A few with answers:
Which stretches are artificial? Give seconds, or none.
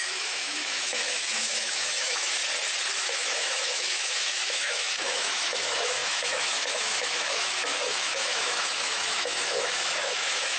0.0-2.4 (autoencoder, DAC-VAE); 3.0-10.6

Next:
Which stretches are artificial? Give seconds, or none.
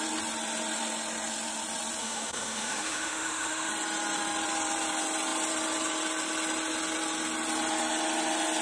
2.0-3.7 (autoencoder, DAC-VAE)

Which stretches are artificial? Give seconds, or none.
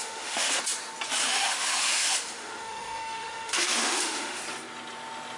0.0-0.6 (autoencoder, DAC-VAE); 1.2-4.4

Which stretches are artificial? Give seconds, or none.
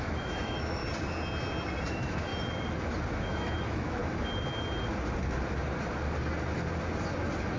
0.0-0.8 (autoencoder, DAC-VAE); 1.9-2.3; 3.1-4.0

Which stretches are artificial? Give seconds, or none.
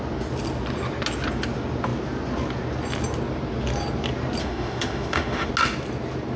4.4-5.5 (autoencoder, DAC-VAE)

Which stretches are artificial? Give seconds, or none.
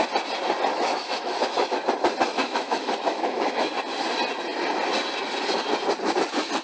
0.7-1.7 (autoencoder, DAC-VAE); 2.3-3.7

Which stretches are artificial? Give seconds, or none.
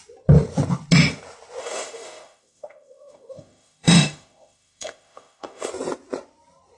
1.6-5.7 (autoencoder, DAC-VAE)